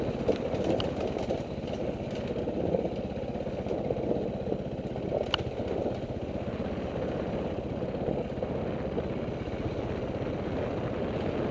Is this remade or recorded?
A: recorded